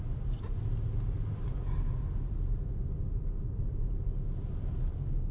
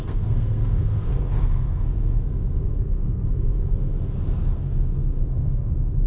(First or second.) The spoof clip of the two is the second